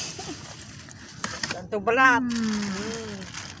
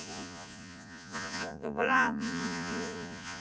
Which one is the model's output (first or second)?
second